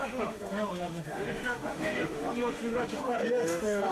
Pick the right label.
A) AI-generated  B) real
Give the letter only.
A